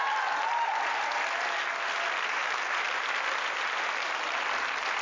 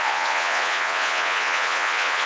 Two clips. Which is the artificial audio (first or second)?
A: second